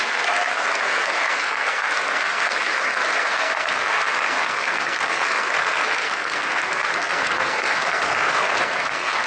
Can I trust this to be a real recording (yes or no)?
no